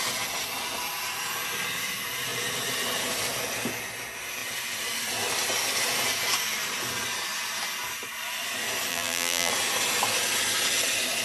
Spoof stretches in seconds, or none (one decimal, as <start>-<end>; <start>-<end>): 8.9-9.5